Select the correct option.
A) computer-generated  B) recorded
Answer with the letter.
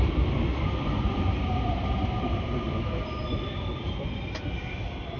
B